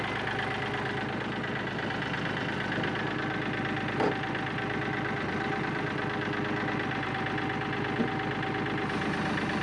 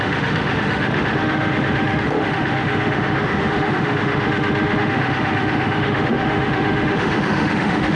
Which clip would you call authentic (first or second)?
first